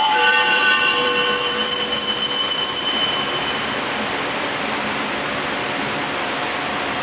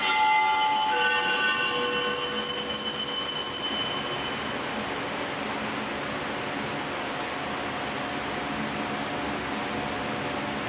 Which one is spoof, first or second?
first